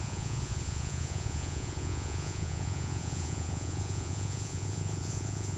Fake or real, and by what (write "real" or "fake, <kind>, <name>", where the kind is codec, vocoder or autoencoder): fake, vocoder, Vocos